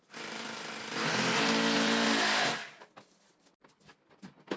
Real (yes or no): yes